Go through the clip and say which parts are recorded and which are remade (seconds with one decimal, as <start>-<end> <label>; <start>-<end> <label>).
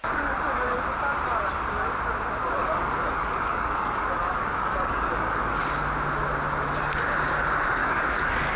0.0-2.6 recorded; 2.6-5.6 remade; 5.6-7.8 recorded; 7.8-8.6 remade